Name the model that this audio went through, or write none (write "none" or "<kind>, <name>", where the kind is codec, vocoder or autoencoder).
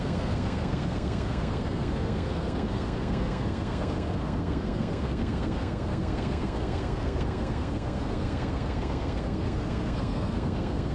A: codec, SNAC